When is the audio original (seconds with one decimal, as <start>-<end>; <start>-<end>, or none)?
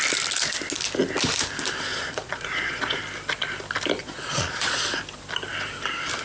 0.0-1.9; 3.0-4.0; 4.8-6.2